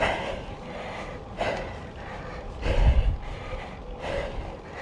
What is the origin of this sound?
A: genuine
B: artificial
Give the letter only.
A